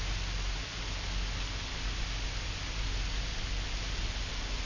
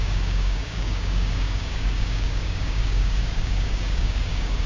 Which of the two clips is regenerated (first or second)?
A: second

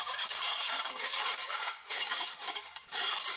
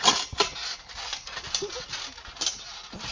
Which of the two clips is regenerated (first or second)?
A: first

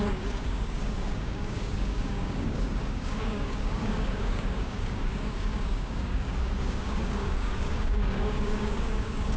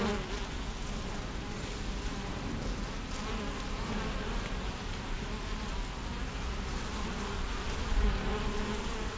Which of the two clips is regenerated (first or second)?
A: first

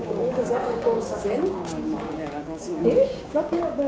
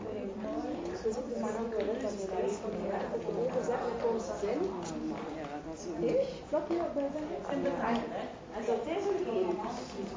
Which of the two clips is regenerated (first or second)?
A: first